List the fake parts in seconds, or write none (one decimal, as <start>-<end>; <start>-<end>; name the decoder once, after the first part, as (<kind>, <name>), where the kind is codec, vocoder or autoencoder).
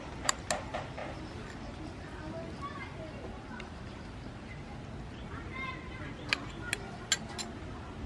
none